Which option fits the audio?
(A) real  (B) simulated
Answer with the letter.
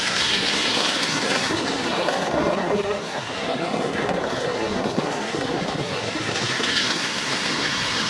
B